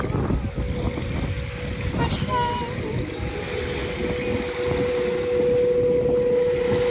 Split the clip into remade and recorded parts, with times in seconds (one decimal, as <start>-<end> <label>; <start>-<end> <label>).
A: 0.0-6.9 recorded